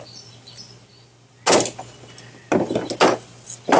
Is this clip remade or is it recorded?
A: recorded